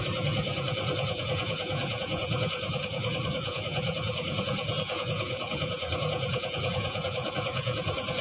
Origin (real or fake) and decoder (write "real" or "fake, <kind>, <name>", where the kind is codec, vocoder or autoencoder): fake, vocoder, Vocos